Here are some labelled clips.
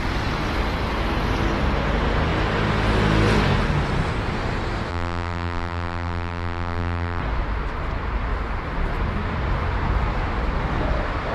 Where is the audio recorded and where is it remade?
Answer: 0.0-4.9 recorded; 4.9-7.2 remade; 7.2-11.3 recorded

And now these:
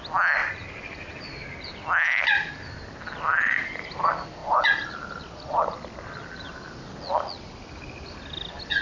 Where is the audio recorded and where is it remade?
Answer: 0.0-0.4 recorded; 0.4-3.9 remade; 3.9-4.4 recorded; 4.4-6.4 remade; 6.4-8.8 recorded

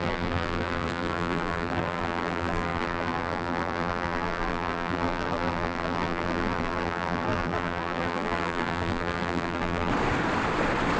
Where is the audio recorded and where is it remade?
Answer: 0.0-9.9 remade; 9.9-11.0 recorded